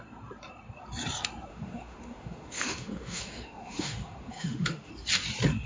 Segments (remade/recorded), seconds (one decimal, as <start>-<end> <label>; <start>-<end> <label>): 0.0-1.5 recorded; 1.5-4.9 remade; 4.9-5.7 recorded